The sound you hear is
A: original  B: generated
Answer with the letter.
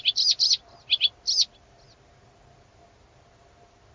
A